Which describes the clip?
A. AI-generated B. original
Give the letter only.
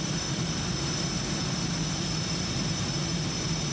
B